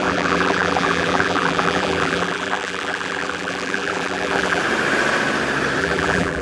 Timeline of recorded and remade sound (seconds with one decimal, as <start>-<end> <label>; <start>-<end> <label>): 0.0-4.6 remade; 4.6-5.8 recorded; 5.8-6.4 remade